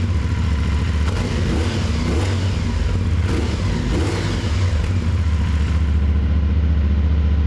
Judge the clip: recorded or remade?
recorded